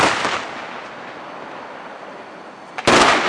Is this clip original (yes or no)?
yes